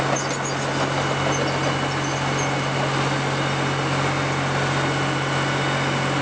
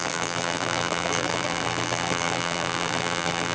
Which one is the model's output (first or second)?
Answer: second